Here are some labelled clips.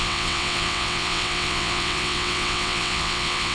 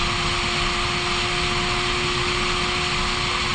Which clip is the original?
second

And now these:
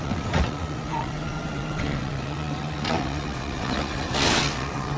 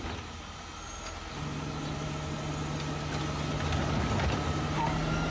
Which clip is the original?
second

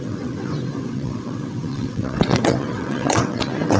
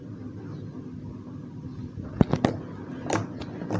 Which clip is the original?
second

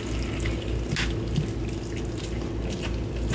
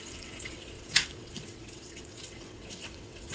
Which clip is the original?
first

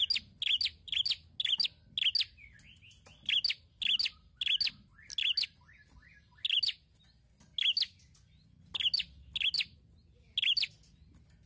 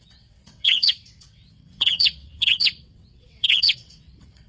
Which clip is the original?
first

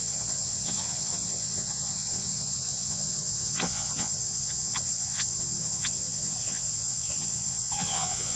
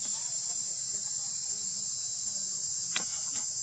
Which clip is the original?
second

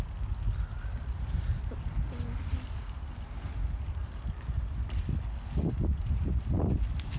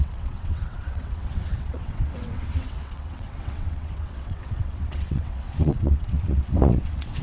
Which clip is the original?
first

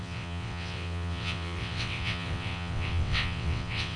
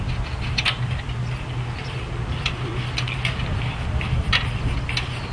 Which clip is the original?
second